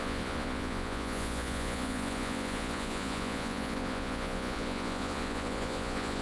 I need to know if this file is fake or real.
fake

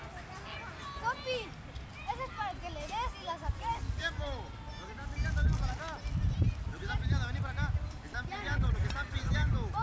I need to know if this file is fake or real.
real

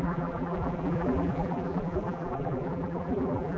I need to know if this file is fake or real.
fake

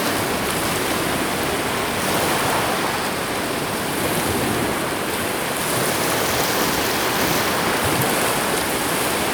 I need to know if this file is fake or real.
real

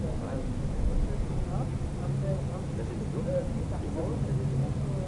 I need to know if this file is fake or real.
real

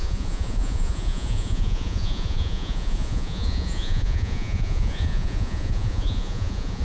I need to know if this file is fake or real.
fake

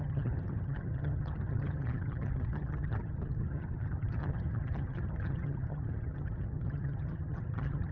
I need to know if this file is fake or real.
fake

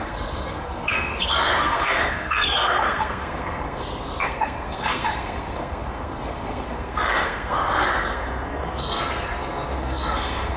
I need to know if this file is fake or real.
fake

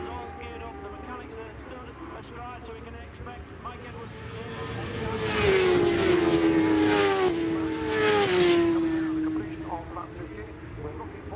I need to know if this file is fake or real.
real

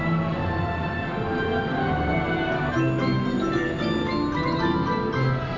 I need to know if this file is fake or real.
real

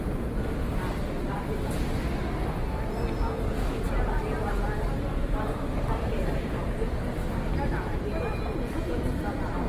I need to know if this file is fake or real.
real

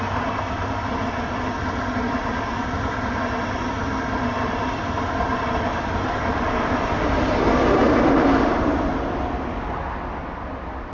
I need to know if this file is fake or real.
real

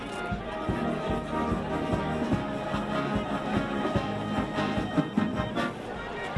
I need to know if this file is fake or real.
real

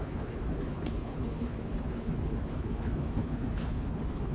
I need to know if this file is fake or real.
fake